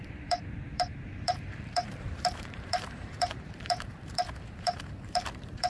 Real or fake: fake